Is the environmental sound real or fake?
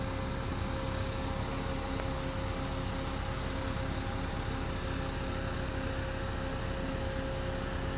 real